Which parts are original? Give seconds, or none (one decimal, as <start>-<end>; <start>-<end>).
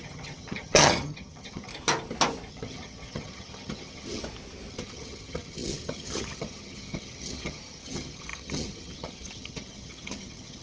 1.7-2.5; 4.2-4.7